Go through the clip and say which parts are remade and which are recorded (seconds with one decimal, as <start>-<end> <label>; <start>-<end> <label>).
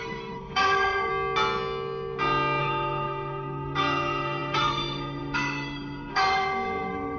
0.0-1.1 remade; 1.1-2.6 recorded; 2.6-7.2 remade